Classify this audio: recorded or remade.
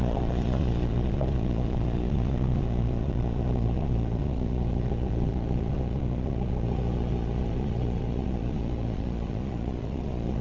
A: remade